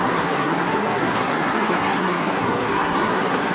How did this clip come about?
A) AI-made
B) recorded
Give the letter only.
A